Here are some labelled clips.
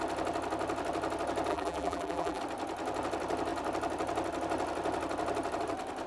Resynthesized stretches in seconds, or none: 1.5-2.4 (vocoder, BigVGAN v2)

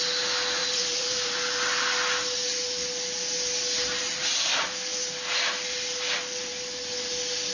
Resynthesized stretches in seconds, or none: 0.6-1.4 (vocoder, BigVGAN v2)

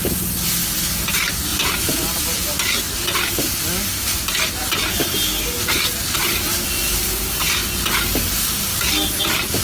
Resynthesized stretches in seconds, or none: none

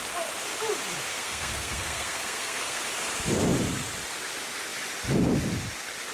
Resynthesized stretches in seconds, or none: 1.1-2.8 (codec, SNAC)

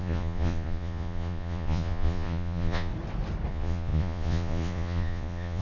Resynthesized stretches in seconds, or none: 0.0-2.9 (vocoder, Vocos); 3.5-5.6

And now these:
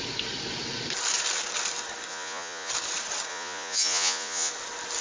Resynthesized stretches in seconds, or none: 2.1-2.7 (vocoder, Vocos); 3.3-4.5

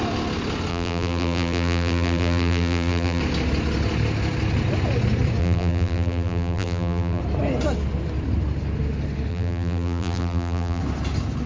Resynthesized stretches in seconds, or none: 0.7-3.2 (vocoder, BigVGAN v2); 5.4-7.2; 9.3-10.8

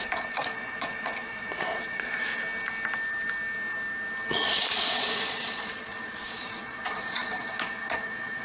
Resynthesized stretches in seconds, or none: 0.0-2.3 (vocoder, Vocos); 4.3-8.4